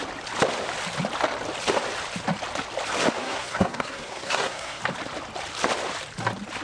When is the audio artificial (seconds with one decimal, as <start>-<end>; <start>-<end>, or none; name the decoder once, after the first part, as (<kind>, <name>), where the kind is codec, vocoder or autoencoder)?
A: 3.2-4.8 (codec, SNAC)